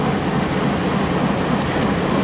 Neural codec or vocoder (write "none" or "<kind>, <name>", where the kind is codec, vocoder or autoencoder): none